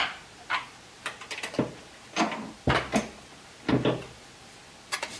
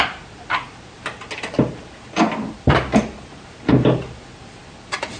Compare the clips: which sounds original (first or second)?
first